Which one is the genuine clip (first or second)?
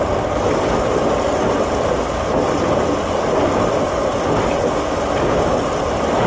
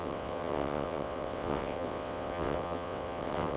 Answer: first